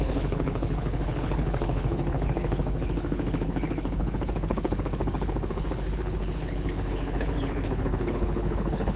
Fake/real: fake